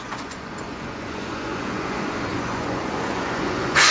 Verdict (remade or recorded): remade